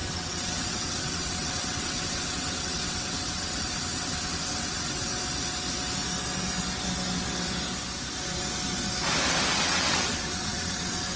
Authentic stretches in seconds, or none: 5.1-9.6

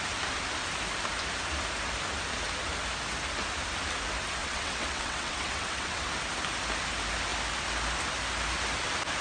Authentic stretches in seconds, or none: 0.0-4.4; 6.1-9.2

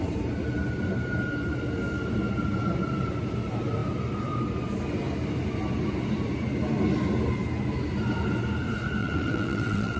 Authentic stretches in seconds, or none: 0.0-9.0

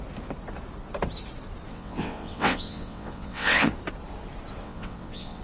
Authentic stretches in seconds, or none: 0.0-1.7; 3.7-4.6

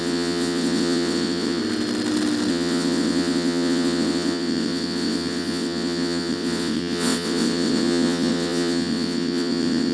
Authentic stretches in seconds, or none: 1.6-2.5

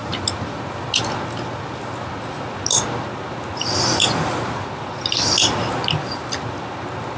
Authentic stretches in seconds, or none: 0.0-7.2